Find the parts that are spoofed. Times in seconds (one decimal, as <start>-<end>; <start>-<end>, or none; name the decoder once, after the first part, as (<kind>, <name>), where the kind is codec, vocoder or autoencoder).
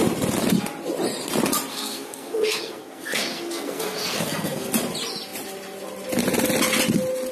1.7-4.7 (codec, SNAC)